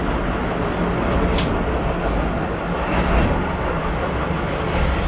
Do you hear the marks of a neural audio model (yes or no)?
no